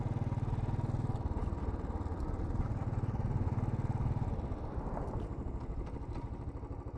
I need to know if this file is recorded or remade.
recorded